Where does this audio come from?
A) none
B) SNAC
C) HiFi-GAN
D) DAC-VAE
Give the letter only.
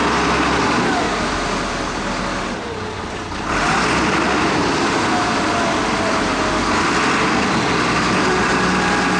A